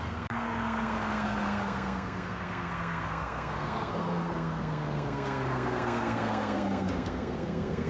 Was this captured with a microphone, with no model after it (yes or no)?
no